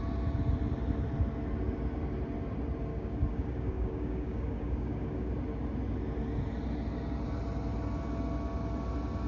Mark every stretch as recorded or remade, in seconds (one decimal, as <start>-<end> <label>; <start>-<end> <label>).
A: 0.0-2.9 recorded; 2.9-5.3 remade; 5.3-9.3 recorded